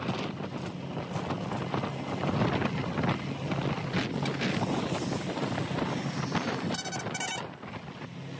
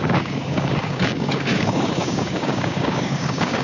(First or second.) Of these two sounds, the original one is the first